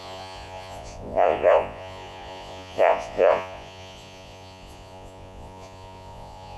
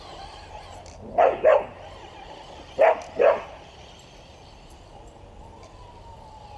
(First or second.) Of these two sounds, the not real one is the first